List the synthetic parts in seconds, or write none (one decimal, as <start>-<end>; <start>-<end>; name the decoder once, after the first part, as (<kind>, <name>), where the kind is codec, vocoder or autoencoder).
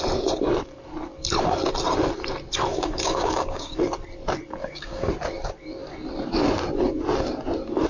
2.7-3.8 (codec, DAC); 4.6-5.1